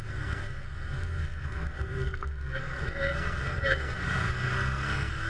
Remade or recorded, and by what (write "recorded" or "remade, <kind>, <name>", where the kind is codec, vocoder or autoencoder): remade, codec, SNAC